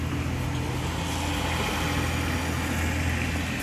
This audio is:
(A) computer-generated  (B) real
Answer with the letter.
B